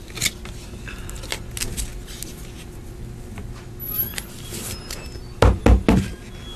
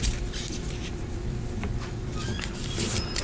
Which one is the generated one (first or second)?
second